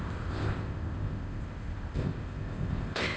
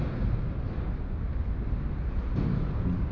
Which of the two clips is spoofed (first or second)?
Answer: first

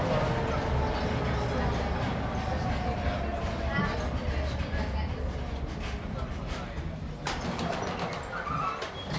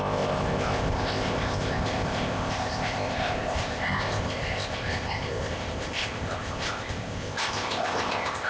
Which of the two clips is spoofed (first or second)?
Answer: second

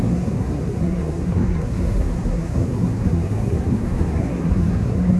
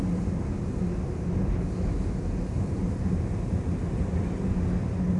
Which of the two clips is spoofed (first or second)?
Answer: first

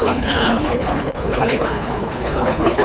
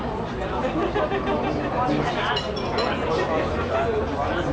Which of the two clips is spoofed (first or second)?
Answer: first